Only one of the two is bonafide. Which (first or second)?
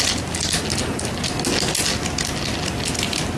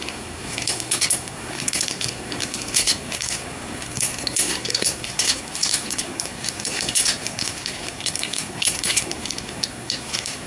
first